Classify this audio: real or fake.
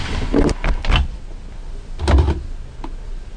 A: real